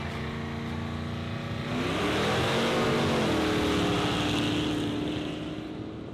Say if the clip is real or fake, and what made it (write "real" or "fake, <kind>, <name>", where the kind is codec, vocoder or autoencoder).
real